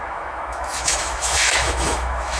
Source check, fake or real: fake